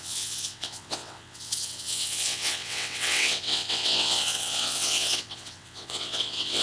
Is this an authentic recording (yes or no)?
no